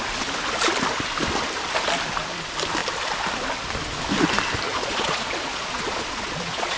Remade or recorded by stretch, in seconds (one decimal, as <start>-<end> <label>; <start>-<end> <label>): 0.0-4.7 recorded; 4.7-6.8 remade